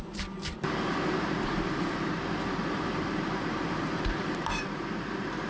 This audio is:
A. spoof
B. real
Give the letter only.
A